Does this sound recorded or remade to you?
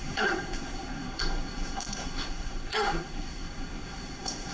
remade